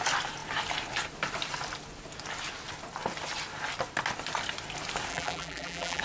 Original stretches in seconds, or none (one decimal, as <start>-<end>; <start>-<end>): 0.0-5.1